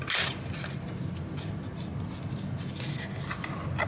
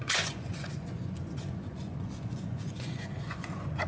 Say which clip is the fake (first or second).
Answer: second